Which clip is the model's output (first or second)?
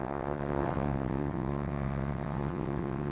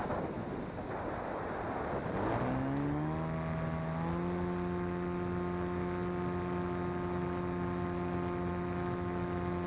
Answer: first